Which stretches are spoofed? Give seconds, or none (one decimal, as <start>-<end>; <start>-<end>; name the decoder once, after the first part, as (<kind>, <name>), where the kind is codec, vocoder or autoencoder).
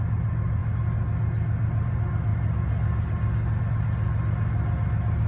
none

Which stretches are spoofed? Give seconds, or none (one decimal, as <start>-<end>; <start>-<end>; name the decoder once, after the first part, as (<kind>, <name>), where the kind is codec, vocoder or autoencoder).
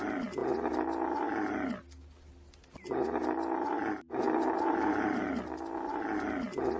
none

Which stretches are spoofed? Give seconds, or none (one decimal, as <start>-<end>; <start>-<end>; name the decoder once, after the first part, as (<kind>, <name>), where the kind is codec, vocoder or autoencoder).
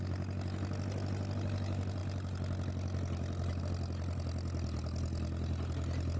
none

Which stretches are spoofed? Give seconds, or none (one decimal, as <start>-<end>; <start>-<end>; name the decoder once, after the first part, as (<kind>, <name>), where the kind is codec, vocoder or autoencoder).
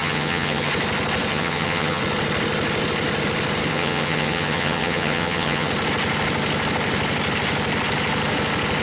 0.0-0.7 (vocoder, HiFi-GAN); 1.3-2.0; 3.7-5.7